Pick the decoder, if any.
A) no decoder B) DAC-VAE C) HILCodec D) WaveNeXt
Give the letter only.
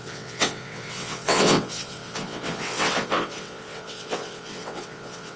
D